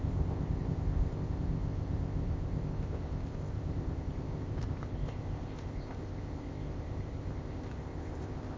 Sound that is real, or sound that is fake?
fake